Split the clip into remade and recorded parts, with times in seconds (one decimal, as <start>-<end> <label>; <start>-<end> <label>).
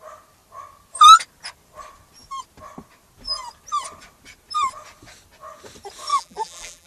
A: 0.0-6.1 recorded; 6.1-6.9 remade